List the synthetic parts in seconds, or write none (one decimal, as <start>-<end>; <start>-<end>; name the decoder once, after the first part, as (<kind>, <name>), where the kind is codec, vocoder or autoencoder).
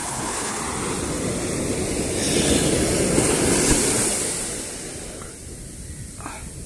0.0-0.6 (codec, HILCodec)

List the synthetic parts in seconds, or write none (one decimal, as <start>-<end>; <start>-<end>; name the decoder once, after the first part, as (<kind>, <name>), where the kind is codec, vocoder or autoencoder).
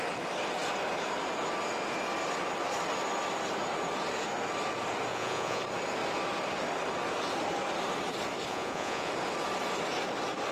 5.1-5.6 (vocoder, Vocos); 8.5-9.1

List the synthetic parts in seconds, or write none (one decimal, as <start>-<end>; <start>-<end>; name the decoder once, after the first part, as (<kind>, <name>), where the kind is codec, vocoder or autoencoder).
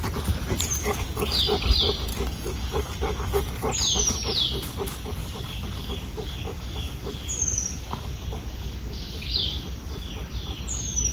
0.8-1.5 (codec, DAC); 2.1-3.4; 5.2-10.1